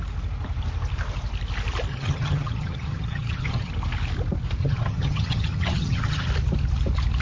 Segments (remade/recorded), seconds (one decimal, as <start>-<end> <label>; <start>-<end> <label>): 0.0-1.9 recorded; 1.9-3.7 remade; 3.7-4.6 recorded; 4.6-6.3 remade; 6.3-7.2 recorded